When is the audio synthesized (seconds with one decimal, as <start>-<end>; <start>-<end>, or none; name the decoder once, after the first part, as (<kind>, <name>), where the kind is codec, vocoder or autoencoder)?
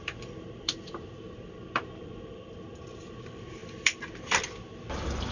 0.0-5.3 (vocoder, BigVGAN v2)